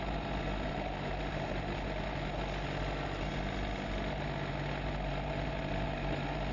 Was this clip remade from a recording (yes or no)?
no